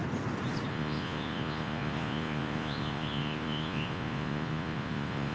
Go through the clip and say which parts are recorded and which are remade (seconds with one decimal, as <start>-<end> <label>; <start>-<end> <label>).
0.0-0.7 recorded; 0.7-5.3 remade